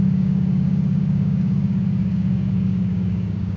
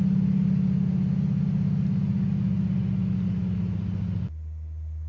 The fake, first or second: first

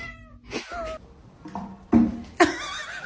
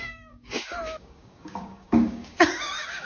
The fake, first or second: second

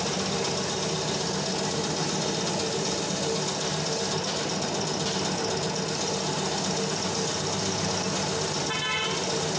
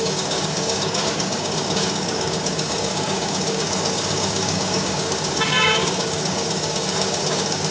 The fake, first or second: second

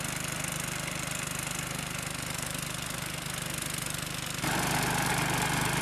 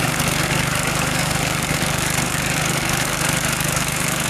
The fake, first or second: second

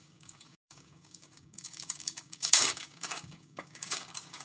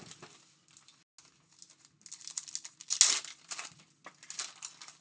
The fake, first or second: first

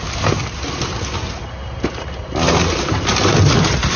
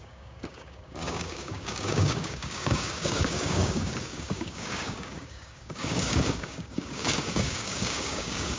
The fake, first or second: second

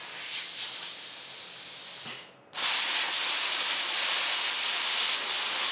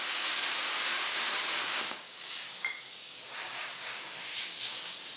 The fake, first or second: second